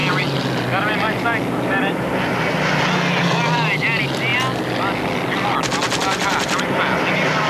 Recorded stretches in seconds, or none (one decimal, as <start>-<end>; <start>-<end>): 0.0-7.5